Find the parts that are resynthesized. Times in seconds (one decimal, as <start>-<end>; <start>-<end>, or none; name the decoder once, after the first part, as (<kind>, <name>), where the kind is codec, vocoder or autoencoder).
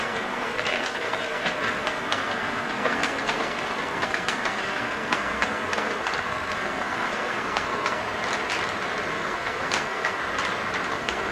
0.0-8.0 (codec, SNAC); 9.1-10.2; 10.9-11.3